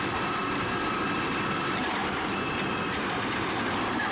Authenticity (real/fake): real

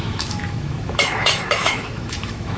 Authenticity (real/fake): fake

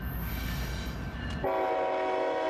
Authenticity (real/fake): real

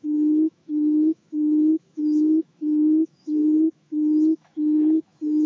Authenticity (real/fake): fake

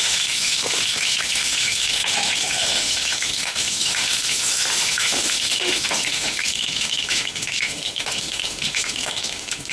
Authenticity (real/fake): fake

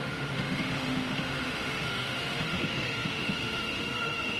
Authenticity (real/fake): fake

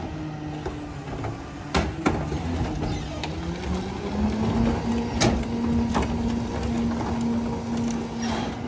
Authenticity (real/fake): real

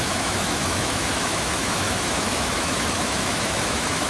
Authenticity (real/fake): fake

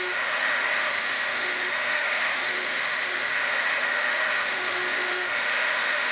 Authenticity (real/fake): fake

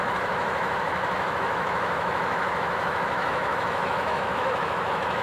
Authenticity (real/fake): fake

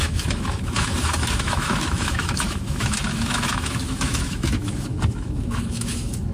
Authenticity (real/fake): fake